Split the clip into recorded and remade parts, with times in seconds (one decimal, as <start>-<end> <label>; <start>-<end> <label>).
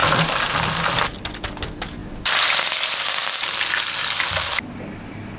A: 0.0-5.4 recorded